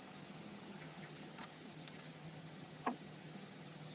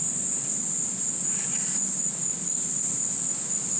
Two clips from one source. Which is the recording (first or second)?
second